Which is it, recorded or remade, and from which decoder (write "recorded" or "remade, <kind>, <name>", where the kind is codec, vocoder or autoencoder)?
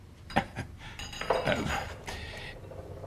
remade, vocoder, BigVGAN v2